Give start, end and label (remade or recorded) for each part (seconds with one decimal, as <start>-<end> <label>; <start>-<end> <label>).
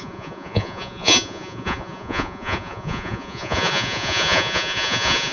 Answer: 0.0-5.3 remade